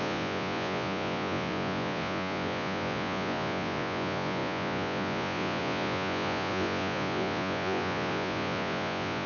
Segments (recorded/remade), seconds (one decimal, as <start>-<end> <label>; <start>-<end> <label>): 0.0-9.3 remade